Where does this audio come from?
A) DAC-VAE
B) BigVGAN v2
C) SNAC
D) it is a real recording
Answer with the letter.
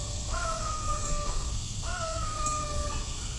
C